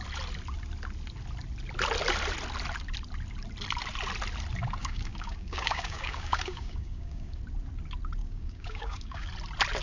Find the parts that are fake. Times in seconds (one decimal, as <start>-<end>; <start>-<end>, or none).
4.8-7.4; 8.2-9.3